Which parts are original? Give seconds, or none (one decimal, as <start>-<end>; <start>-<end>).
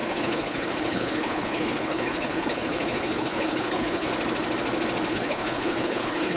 4.1-5.1